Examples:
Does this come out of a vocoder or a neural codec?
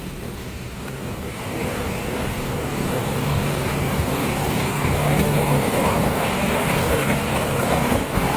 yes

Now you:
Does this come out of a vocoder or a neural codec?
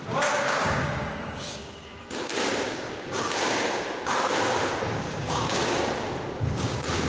yes